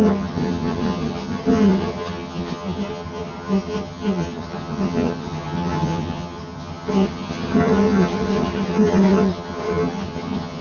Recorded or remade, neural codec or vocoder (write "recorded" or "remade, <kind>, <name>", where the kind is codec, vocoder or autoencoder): remade, vocoder, HiFi-GAN